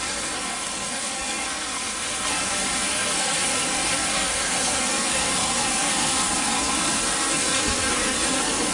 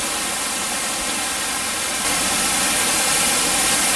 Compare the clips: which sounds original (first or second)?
second